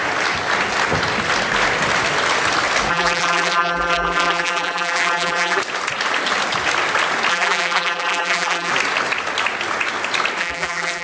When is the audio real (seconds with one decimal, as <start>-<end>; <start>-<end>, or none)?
0.0-2.9; 5.6-7.3; 8.7-10.4